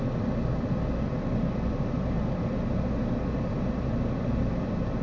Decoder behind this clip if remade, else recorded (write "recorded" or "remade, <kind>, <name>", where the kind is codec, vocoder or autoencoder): recorded